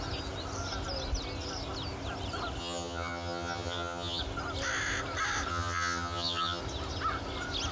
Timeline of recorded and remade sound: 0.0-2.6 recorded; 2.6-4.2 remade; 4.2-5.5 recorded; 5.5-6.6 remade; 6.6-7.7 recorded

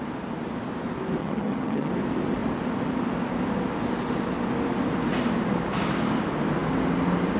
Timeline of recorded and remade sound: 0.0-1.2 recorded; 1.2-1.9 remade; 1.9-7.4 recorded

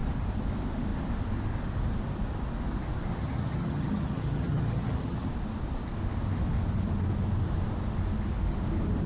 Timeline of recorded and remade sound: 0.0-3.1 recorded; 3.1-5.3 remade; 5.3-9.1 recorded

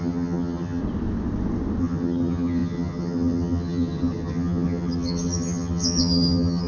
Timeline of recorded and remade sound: 0.0-0.8 remade; 0.8-1.8 recorded; 1.8-6.7 remade

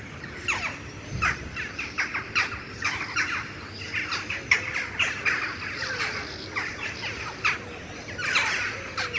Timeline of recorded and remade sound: 0.0-9.2 recorded

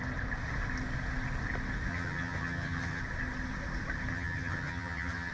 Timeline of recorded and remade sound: 0.0-1.9 recorded; 1.9-3.0 remade; 3.0-4.1 recorded; 4.1-5.3 remade

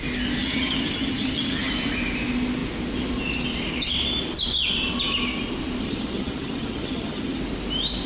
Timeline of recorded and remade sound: 0.0-0.4 recorded; 0.4-1.7 remade; 1.7-5.8 recorded; 5.8-7.4 remade; 7.4-8.1 recorded

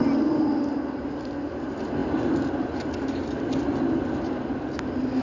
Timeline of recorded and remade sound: 0.0-5.2 recorded